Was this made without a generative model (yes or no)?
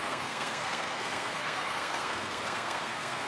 no